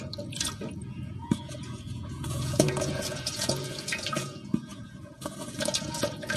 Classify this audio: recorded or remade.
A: remade